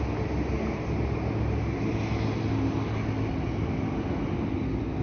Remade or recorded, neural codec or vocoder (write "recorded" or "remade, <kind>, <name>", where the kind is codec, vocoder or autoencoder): recorded